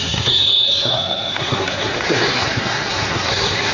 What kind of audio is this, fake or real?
fake